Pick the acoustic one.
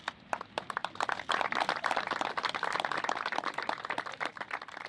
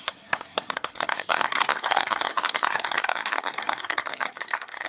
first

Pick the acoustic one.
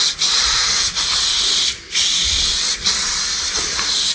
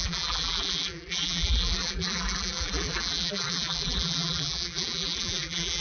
first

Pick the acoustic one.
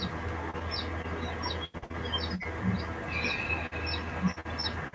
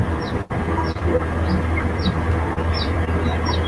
first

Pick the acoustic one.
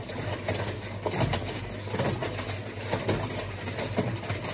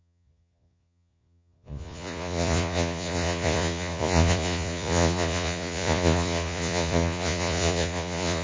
first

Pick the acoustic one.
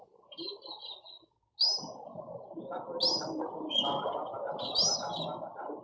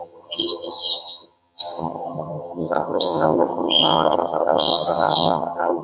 first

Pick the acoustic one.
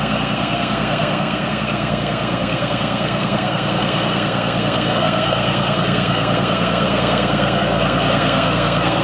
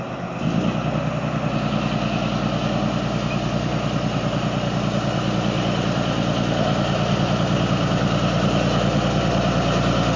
second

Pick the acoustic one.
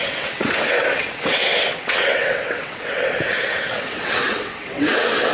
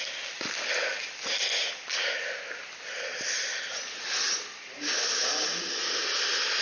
second